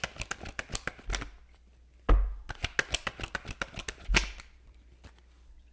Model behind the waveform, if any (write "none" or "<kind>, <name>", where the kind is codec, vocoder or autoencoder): none